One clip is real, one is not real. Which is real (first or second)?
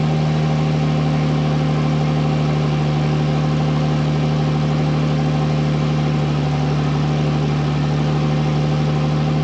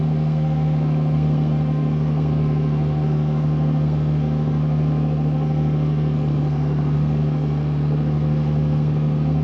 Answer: first